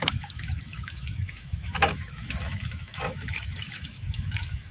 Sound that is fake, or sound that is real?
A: fake